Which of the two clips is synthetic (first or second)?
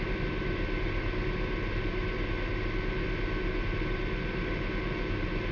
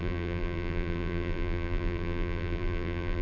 second